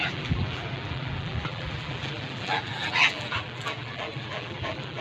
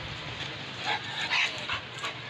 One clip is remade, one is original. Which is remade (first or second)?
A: first